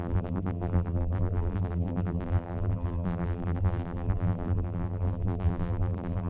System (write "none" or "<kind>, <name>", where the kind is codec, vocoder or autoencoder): vocoder, BigVGAN v2